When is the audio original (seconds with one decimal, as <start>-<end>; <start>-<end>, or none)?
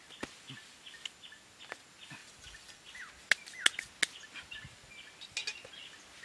0.0-2.2; 3.1-6.2